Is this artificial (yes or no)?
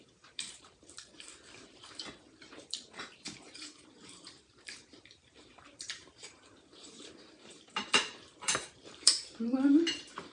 yes